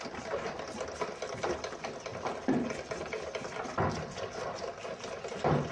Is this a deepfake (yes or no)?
no